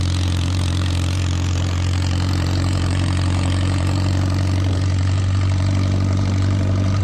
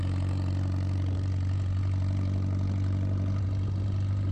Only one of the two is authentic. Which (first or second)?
second